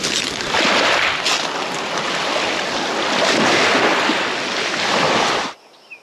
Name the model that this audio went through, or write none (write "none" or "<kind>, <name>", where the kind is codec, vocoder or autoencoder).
none